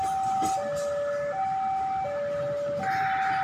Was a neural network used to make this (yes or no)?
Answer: no